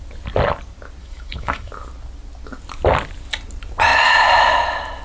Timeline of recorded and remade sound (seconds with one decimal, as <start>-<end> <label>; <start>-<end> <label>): 0.0-1.0 recorded; 1.0-1.7 remade; 1.7-5.0 recorded